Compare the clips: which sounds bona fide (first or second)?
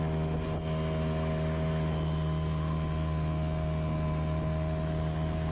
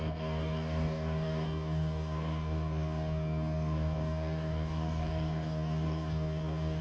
first